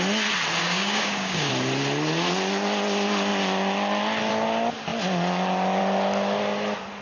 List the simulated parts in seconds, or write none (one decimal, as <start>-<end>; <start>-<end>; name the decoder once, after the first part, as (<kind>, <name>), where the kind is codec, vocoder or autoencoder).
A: 0.6-1.5 (codec, DAC)